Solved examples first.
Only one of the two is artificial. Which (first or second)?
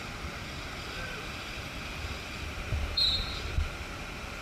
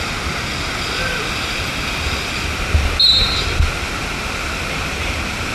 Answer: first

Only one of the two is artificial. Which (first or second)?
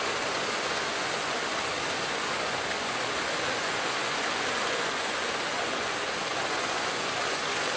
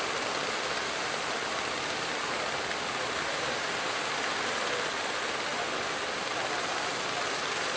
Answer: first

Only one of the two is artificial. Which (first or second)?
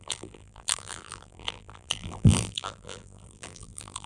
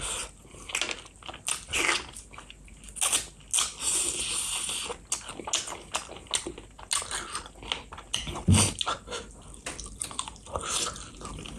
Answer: first